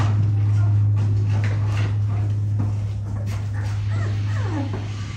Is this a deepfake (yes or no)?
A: no